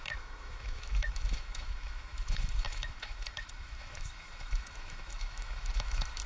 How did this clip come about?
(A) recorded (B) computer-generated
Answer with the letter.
B